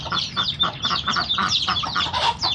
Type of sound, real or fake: fake